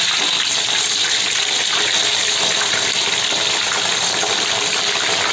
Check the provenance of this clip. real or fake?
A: real